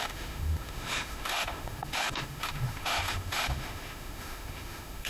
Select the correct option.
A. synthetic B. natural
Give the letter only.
A